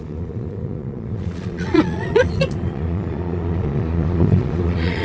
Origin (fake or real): fake